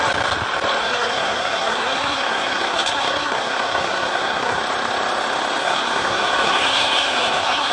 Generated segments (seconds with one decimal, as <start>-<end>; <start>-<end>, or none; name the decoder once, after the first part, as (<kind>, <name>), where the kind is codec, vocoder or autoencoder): 0.8-4.6 (codec, SNAC); 5.6-7.7

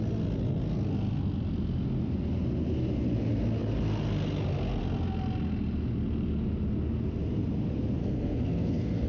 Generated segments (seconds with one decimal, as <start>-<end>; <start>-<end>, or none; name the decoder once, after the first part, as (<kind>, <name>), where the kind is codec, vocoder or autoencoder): 8.0-9.1 (codec, SNAC)

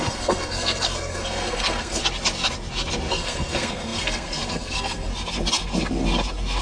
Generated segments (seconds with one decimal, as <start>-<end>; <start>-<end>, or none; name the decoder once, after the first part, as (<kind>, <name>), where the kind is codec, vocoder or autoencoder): 0.0-2.0 (codec, SNAC); 3.1-5.1

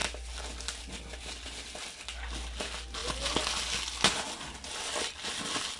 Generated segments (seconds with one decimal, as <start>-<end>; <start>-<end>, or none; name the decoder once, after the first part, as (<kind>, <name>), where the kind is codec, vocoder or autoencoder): none

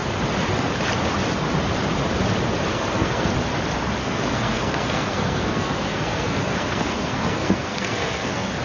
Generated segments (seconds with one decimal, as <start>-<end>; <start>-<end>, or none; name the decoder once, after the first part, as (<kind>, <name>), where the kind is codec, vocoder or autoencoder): 2.7-3.3 (codec, SNAC); 4.0-8.6

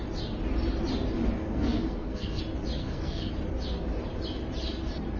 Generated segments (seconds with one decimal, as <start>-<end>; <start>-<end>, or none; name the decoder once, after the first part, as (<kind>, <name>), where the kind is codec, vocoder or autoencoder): 1.4-2.4 (codec, SNAC); 2.8-3.3